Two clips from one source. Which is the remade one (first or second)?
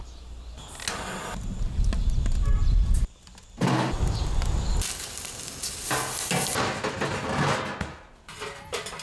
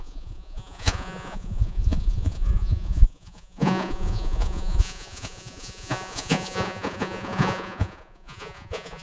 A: second